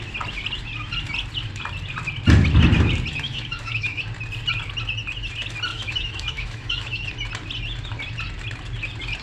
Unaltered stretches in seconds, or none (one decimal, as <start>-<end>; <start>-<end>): 0.0-3.1; 4.0-5.7; 7.1-9.2